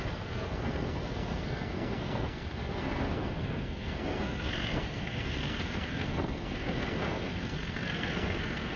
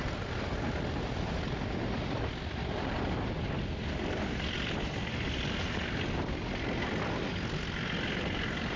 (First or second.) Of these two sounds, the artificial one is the first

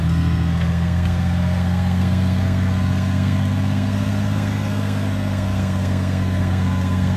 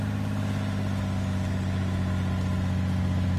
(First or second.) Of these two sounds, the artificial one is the first